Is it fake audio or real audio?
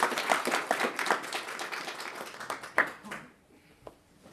real